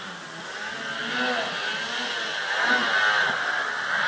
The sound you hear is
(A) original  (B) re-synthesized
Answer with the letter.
A